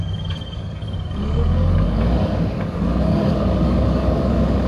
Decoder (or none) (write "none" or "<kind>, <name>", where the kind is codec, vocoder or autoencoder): codec, DAC